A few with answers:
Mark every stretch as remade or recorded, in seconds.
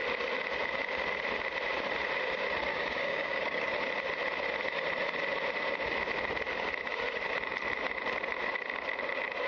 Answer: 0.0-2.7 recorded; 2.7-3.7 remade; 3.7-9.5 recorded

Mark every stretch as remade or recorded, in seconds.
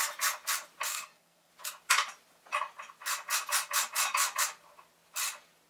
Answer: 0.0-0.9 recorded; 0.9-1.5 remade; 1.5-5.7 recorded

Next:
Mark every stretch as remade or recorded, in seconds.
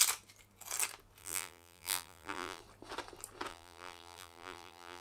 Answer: 0.0-1.2 recorded; 1.2-2.6 remade; 2.6-3.5 recorded; 3.5-5.0 remade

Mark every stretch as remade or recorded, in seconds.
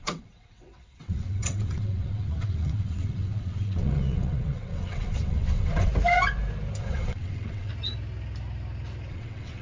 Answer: 0.0-5.9 remade; 5.9-6.8 recorded; 6.8-7.7 remade; 7.7-9.1 recorded; 9.1-9.6 remade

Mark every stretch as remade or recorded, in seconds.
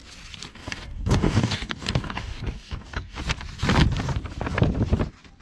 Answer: 0.0-0.5 recorded; 0.5-3.2 remade; 3.2-5.4 recorded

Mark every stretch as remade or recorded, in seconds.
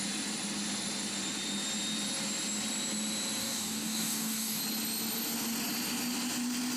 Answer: 0.0-3.4 recorded; 3.4-4.6 remade; 4.6-6.8 recorded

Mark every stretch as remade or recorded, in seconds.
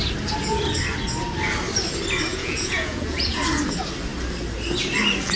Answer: 0.0-2.3 recorded; 2.3-3.4 remade; 3.4-5.4 recorded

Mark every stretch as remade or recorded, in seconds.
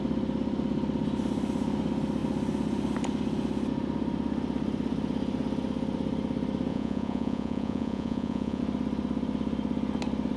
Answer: 0.0-6.7 recorded; 6.7-8.6 remade; 8.6-10.4 recorded